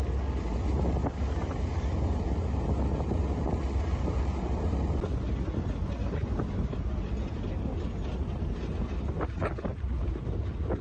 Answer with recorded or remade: recorded